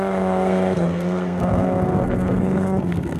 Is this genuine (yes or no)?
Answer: no